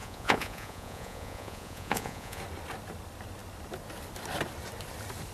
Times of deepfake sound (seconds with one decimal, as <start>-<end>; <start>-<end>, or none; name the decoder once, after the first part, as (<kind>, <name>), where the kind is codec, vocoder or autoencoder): 0.0-2.4 (vocoder, Vocos)